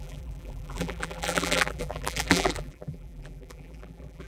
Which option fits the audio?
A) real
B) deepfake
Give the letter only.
B